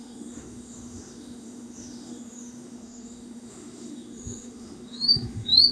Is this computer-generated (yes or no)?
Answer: yes